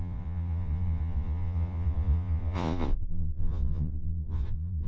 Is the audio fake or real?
fake